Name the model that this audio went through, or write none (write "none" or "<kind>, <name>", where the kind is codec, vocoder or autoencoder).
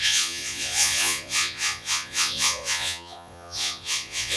vocoder, Vocos